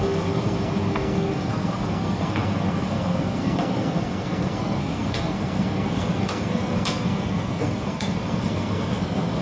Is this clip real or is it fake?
fake